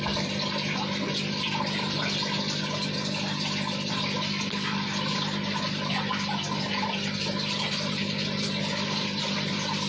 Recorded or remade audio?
recorded